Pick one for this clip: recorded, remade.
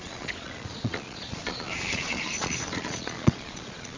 remade